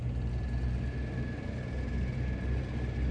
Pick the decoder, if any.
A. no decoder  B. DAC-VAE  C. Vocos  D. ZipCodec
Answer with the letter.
A